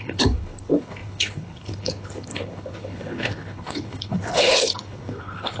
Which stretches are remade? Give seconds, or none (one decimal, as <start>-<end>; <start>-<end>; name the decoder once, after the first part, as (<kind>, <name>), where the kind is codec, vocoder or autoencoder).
0.0-5.6 (codec, HILCodec)